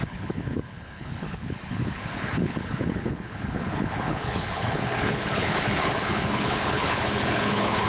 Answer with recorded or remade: remade